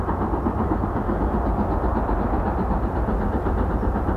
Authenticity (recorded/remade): recorded